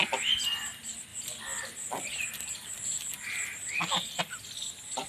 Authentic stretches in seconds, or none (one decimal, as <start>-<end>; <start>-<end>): 0.0-1.1; 4.2-5.1